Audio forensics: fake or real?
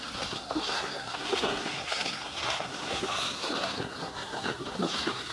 fake